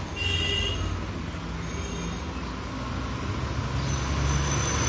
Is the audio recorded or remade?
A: recorded